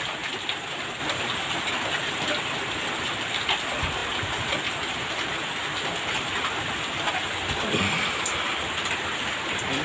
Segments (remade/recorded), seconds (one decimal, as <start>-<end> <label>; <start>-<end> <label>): 0.0-9.8 recorded